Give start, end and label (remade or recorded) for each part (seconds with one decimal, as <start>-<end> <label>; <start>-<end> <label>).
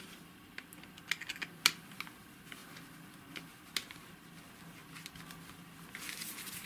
0.0-6.7 recorded